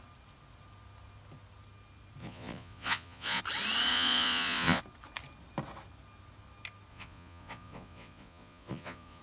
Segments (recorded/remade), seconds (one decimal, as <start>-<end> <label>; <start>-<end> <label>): 0.0-2.2 recorded; 2.2-3.4 remade; 3.4-3.9 recorded; 3.9-4.8 remade; 4.8-6.9 recorded; 6.9-9.2 remade